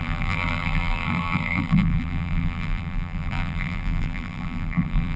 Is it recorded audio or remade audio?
remade